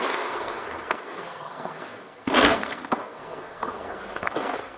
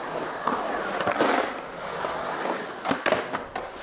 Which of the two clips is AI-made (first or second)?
first